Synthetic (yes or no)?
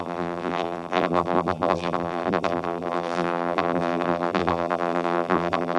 yes